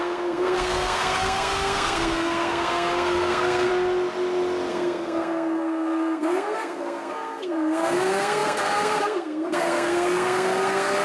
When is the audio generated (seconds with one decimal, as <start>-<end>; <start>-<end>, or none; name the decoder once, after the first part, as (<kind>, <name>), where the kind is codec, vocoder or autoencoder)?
0.0-3.7 (codec, SNAC); 4.7-11.0

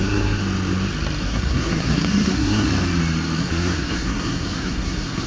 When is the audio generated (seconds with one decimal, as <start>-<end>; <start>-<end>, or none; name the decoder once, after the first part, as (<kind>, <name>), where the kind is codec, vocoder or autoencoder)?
0.0-0.4 (codec, SNAC); 1.2-2.7; 3.4-5.3

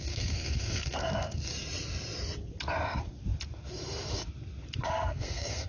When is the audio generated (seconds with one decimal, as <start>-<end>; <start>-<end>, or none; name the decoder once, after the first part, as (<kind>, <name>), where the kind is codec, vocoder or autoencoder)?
0.0-1.5 (codec, SNAC); 4.9-5.7

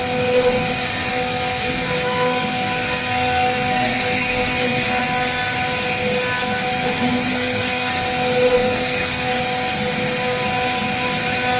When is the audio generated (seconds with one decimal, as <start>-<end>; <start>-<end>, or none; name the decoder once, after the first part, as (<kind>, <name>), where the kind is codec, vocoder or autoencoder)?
1.1-5.0 (codec, SNAC); 7.3-7.9; 8.6-9.4

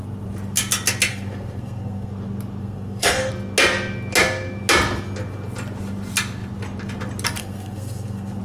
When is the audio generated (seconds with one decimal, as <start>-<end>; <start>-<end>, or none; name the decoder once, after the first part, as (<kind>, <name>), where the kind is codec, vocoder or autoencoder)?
1.1-2.1 (codec, SNAC); 2.6-3.3; 7.4-8.4

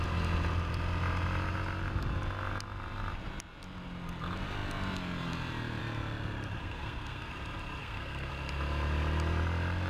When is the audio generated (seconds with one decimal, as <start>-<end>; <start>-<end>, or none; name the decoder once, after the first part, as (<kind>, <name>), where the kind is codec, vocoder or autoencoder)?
6.6-7.3 (codec, SNAC); 7.8-8.3